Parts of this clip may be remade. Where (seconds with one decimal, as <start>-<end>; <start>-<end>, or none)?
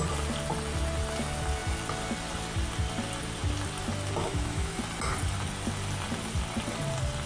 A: 4.2-4.8